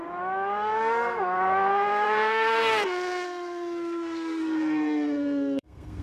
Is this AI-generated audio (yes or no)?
yes